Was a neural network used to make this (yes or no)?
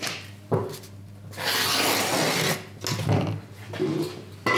no